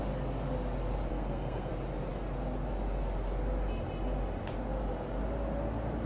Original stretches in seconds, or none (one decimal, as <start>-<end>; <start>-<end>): 0.0-1.1; 1.7-6.1